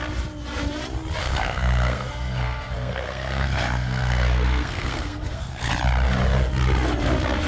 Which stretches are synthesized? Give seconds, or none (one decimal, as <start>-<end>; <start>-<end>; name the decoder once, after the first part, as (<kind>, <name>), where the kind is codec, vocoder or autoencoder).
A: 1.2-5.7 (codec, SNAC)